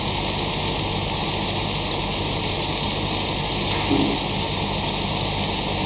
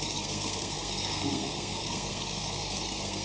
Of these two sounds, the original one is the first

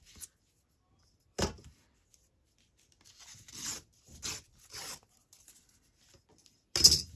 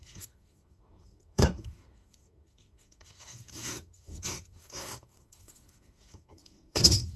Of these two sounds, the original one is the first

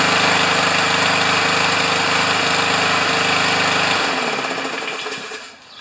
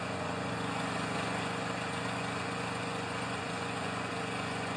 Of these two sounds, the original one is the first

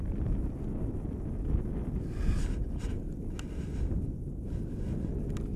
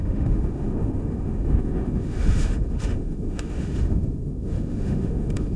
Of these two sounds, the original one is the first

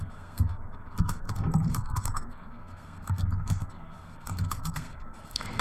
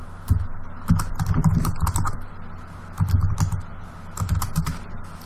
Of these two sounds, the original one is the second